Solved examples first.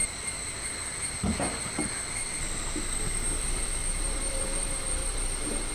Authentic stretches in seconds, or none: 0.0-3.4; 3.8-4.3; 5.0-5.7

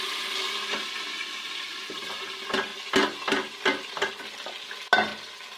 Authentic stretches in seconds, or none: 0.0-1.2; 2.1-5.1

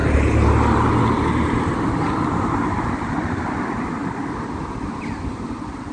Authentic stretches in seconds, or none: 0.0-5.9

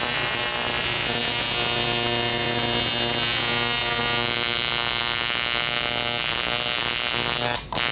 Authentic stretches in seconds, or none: 0.0-7.9

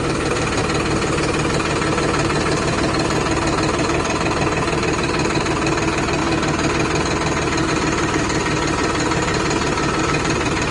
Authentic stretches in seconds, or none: 0.6-1.5; 6.2-7.7; 9.3-10.0

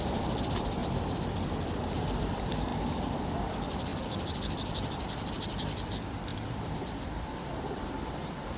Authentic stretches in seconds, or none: 0.8-2.0; 2.7-3.2

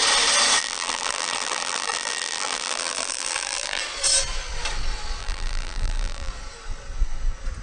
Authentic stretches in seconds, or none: 0.0-0.6; 3.8-5.2; 6.3-7.6

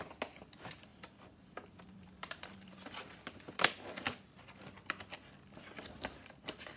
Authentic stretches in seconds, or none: 0.0-0.9; 3.2-6.8